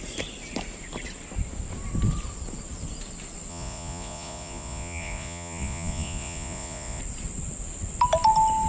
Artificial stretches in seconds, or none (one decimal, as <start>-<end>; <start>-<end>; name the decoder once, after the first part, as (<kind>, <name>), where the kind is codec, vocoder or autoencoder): 3.5-7.0 (vocoder, Vocos)